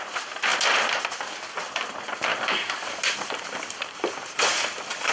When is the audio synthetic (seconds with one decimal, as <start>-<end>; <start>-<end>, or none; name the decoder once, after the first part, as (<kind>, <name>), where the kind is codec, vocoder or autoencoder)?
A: 0.5-1.3 (vocoder, BigVGAN v2); 2.3-4.1